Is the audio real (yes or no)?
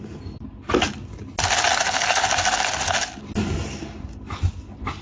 yes